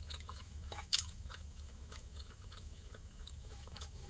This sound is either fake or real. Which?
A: fake